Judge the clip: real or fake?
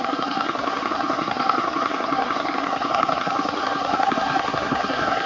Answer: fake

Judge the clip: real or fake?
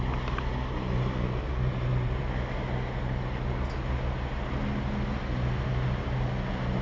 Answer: real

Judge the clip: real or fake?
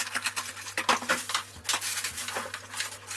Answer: real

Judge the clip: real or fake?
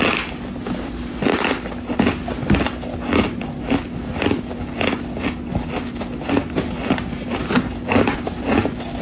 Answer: real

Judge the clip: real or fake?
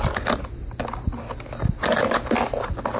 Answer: real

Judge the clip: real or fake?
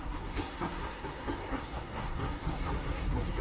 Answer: fake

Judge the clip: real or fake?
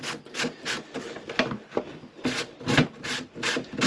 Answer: real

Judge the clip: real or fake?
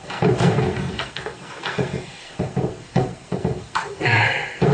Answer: fake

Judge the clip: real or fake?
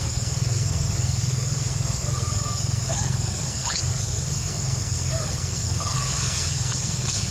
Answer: fake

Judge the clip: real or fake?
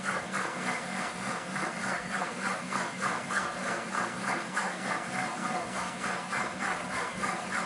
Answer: fake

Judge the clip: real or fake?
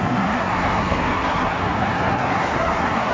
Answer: fake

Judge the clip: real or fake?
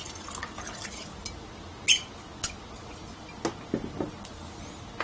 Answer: real